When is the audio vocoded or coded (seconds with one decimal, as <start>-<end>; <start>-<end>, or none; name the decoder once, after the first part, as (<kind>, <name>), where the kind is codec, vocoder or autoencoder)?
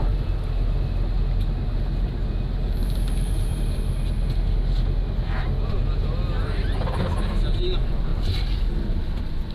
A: 2.8-3.8 (vocoder, BigVGAN v2); 8.1-8.7